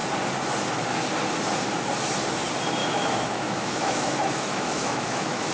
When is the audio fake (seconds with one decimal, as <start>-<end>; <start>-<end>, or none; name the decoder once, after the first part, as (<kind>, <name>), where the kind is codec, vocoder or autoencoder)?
2.8-5.5 (autoencoder, DAC-VAE)